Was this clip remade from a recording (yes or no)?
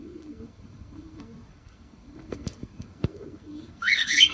yes